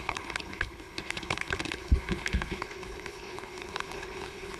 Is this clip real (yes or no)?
no